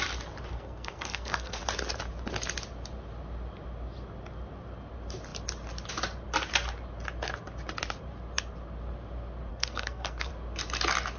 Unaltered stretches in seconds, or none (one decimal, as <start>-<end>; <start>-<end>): 0.0-0.5; 1.6-9.5; 10.3-11.2